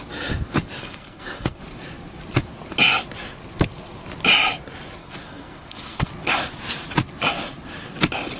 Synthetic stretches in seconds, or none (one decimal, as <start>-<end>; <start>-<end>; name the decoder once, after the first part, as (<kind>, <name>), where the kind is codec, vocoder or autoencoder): 0.8-1.6 (codec, SNAC); 5.0-6.1